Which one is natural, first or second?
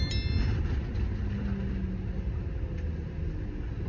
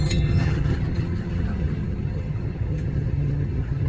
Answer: first